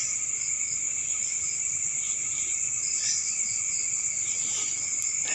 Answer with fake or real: real